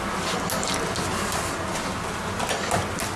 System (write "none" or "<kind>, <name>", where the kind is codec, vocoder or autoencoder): none